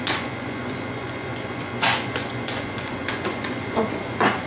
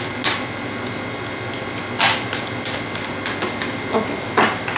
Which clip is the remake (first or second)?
first